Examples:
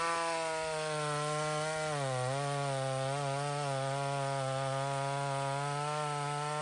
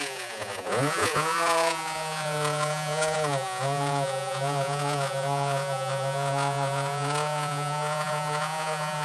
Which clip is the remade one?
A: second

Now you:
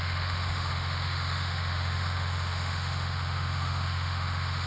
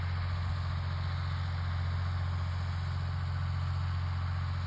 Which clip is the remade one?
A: first